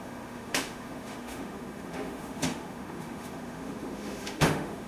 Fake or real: fake